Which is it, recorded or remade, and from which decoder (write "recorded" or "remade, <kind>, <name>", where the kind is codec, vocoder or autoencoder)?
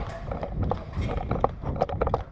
recorded